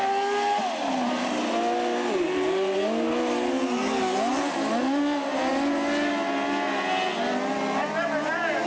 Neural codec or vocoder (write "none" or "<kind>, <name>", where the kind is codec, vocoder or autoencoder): none